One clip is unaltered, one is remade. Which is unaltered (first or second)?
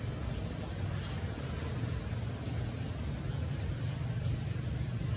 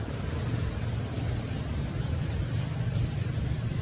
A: first